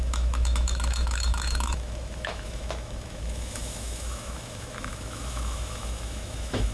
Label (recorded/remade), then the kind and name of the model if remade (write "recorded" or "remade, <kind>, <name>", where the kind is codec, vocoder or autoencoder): remade, autoencoder, DAC-VAE